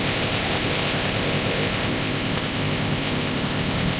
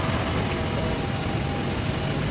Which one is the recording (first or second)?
second